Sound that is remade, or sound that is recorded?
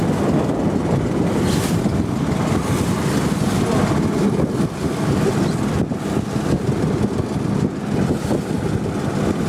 recorded